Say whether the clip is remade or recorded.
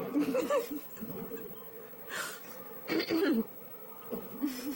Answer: remade